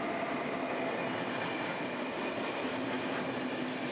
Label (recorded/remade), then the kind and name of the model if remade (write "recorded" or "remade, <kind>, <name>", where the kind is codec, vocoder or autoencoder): recorded